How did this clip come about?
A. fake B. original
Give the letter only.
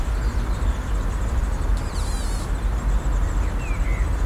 B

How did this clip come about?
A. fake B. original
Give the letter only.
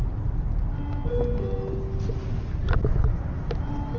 B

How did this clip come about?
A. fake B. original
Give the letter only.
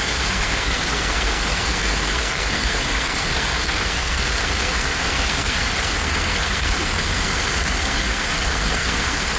A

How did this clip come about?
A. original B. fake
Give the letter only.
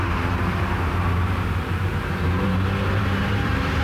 B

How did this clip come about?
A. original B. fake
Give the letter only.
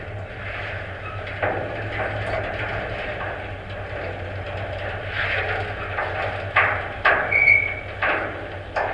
A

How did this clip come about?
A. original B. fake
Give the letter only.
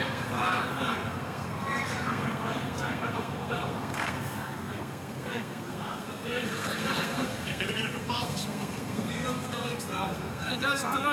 B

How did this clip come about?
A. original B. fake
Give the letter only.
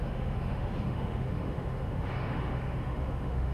B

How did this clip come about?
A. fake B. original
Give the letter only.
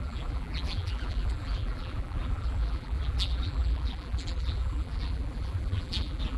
A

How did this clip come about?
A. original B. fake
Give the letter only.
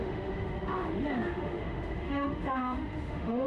B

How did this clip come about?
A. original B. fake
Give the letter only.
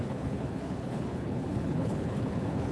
B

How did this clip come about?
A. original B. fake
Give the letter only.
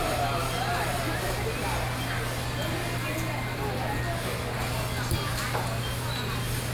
A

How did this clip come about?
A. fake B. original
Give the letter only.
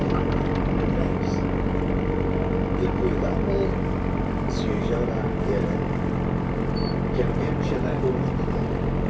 B